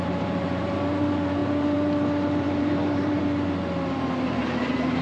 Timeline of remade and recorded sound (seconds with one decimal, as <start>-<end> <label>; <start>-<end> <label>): 0.0-3.2 remade; 3.2-3.9 recorded; 3.9-5.0 remade